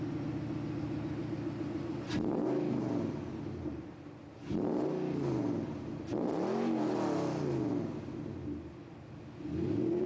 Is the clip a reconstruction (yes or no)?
no